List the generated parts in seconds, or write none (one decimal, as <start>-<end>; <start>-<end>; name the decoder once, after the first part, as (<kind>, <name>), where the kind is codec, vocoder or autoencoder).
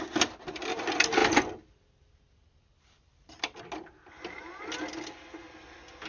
none